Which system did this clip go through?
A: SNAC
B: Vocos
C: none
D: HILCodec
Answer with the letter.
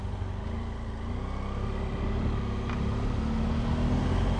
C